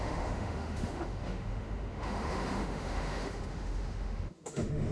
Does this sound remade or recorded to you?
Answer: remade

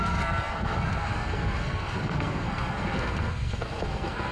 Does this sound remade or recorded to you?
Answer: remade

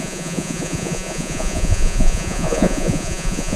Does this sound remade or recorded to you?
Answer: remade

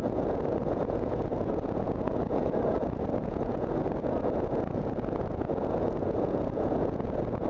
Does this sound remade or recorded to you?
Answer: remade